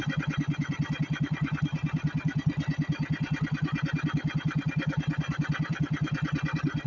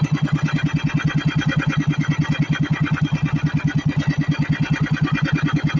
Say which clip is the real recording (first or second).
second